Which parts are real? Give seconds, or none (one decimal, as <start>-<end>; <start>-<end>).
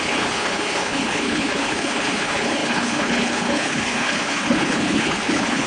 none